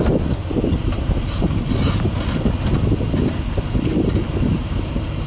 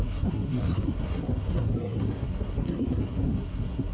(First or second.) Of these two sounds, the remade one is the second